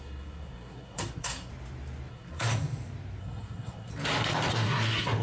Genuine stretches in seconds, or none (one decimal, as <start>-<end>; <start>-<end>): 1.5-2.1; 2.5-3.2; 3.9-4.5